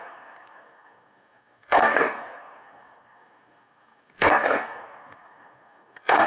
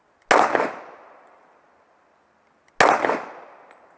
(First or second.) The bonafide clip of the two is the second